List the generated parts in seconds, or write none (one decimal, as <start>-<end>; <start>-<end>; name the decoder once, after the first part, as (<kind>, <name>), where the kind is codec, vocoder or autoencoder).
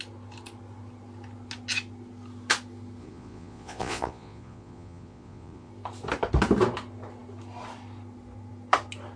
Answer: 3.0-5.7 (vocoder, Vocos)